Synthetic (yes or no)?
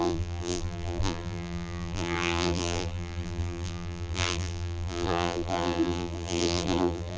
yes